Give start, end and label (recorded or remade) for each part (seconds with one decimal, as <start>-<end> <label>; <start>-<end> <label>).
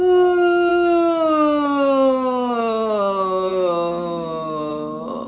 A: 0.0-5.3 recorded